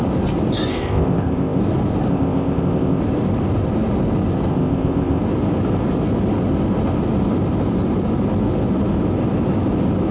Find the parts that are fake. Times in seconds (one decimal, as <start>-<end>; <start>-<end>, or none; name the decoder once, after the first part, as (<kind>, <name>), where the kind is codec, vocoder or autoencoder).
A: 0.7-1.6 (codec, ZipCodec); 2.1-3.0; 4.5-5.2